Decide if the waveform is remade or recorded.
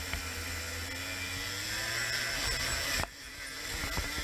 recorded